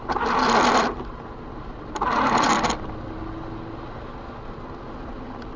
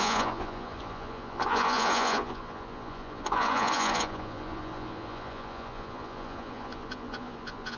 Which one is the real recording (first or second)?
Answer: first